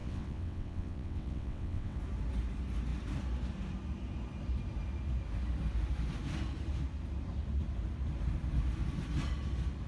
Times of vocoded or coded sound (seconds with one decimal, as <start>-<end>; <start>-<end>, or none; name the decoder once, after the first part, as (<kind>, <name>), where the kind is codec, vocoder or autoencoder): 0.0-2.0 (vocoder, WaveNeXt)